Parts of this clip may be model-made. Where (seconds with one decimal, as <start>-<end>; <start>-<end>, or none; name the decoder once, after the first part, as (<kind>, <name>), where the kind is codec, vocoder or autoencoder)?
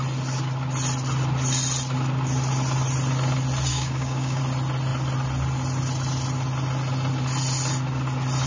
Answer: 3.7-4.4 (codec, DAC)